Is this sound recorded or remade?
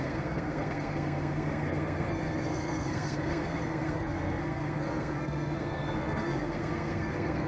remade